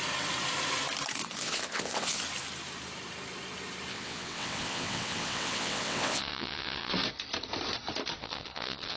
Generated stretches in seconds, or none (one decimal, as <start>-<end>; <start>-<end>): 1.2-2.2; 3.9-6.9; 8.2-9.0